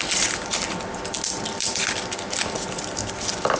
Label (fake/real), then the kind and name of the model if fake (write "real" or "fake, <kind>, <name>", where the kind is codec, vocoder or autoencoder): real